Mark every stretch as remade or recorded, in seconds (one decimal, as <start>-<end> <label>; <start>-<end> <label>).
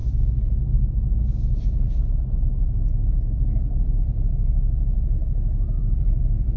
0.0-6.6 recorded